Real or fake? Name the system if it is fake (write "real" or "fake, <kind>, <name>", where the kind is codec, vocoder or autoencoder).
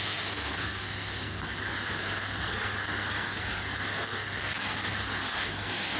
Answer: fake, codec, SNAC